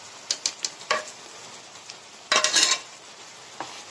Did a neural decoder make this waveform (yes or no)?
no